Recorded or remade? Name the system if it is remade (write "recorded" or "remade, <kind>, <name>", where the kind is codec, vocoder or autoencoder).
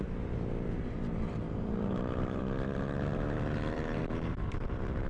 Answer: remade, vocoder, BigVGAN v2